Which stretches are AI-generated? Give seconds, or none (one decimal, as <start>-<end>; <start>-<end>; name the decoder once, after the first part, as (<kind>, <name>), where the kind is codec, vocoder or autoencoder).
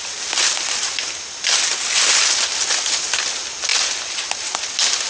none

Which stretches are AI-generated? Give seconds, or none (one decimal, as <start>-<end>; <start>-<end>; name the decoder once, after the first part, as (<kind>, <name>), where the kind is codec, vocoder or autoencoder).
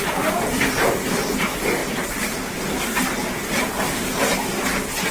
none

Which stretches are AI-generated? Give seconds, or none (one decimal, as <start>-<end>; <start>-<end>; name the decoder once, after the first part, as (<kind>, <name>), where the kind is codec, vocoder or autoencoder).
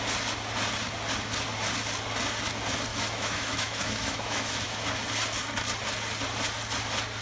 2.9-4.9 (autoencoder, DAC-VAE)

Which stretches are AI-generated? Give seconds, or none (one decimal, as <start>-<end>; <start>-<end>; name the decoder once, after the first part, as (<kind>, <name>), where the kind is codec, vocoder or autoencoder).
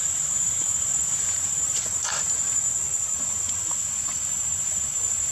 0.0-2.7 (vocoder, BigVGAN v2); 4.3-5.3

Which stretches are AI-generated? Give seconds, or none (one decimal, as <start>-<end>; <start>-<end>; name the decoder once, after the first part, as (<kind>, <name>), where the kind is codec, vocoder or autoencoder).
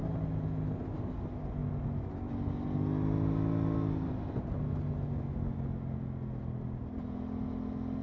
none